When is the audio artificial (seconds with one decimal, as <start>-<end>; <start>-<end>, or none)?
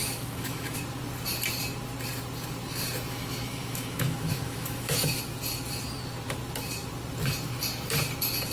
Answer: 0.0-0.8; 3.1-5.2